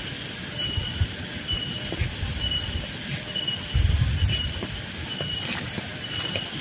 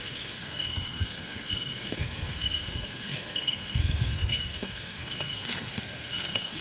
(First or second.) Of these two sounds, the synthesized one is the second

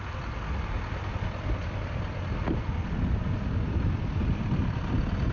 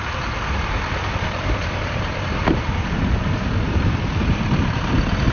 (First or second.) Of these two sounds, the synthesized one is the second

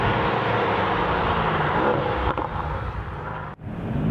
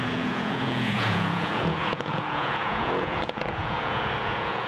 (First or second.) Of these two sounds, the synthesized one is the second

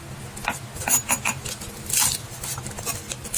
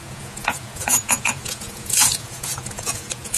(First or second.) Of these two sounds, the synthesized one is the second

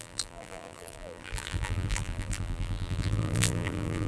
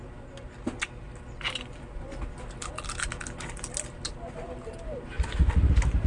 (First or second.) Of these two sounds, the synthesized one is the first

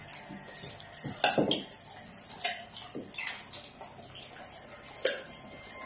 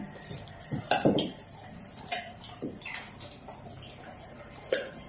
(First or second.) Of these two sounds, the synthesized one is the second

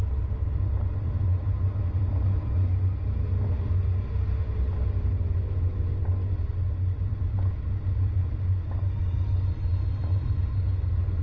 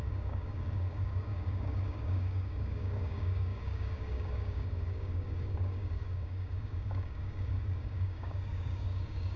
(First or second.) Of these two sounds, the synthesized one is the second